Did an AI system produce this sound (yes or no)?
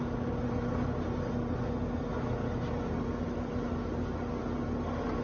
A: no